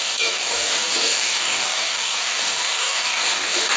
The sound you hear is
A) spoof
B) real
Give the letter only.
A